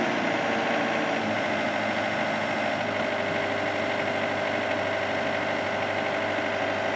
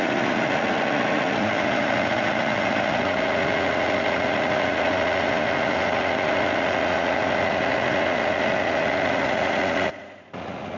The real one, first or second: first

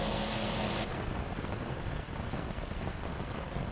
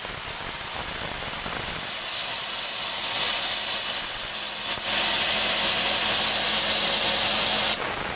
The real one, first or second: second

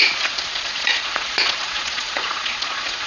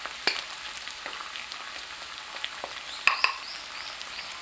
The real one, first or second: second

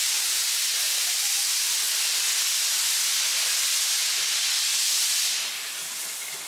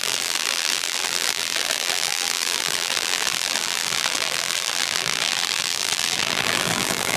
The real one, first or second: first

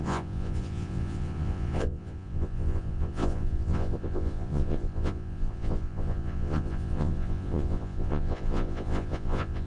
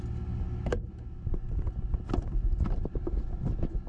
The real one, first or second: second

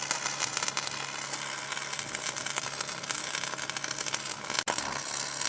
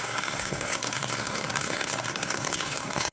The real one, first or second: first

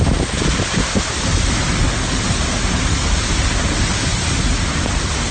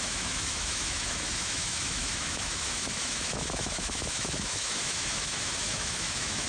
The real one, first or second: first